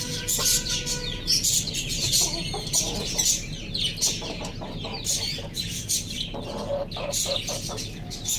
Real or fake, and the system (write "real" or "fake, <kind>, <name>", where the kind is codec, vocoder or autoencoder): real